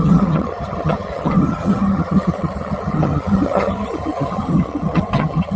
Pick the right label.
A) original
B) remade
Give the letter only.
B